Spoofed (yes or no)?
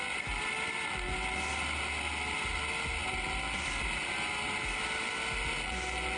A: no